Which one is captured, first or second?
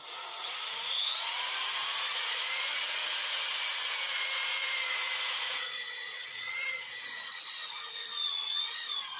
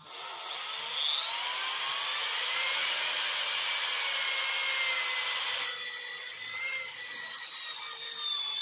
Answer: second